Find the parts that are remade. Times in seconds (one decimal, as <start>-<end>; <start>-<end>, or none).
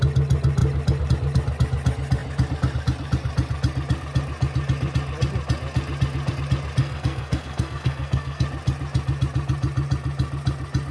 6.8-8.4